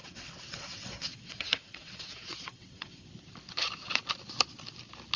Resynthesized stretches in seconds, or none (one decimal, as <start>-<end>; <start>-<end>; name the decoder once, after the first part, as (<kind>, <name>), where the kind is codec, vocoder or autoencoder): 0.0-3.1 (vocoder, WaveNeXt)

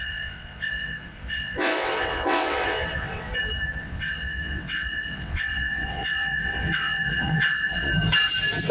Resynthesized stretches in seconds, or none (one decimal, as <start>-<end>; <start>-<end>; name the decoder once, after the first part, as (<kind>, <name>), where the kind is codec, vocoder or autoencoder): 0.0-3.3 (vocoder, WaveNeXt); 3.8-7.9

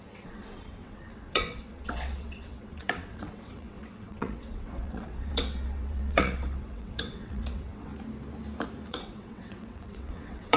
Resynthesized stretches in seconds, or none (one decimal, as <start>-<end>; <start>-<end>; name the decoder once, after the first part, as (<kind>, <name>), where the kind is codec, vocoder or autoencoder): 0.0-7.9 (vocoder, WaveNeXt); 8.9-10.6

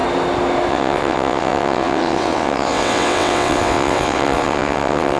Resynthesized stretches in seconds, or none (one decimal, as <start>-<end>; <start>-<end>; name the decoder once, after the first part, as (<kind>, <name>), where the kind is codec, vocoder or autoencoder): 0.7-5.2 (vocoder, WaveNeXt)

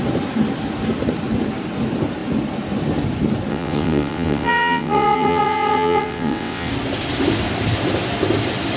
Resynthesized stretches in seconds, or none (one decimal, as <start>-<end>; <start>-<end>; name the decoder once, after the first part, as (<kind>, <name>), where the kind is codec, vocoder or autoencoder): 3.5-6.7 (vocoder, WaveNeXt)

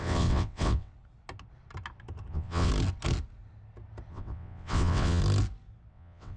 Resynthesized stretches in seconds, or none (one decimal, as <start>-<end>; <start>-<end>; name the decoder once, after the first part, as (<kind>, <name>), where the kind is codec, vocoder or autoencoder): 0.0-0.9 (vocoder, WaveNeXt); 2.3-2.7; 4.1-5.2; 5.9-6.4

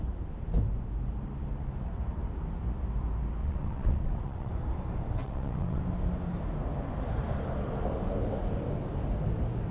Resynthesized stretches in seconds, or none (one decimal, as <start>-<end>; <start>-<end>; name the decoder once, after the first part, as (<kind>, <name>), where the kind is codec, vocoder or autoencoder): 3.4-4.5 (vocoder, WaveNeXt); 5.2-5.8